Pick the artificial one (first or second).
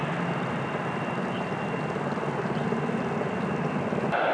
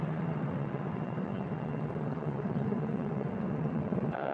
second